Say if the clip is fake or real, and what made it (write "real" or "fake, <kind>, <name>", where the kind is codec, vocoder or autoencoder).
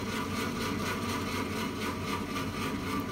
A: real